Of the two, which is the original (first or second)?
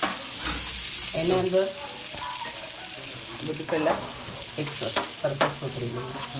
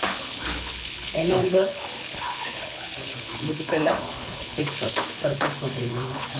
first